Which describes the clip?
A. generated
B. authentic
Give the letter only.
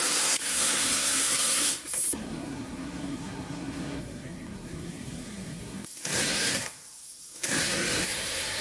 A